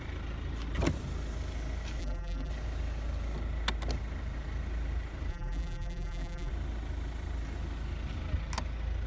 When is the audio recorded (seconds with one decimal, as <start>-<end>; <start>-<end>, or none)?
0.0-2.0; 2.5-5.3; 6.5-9.1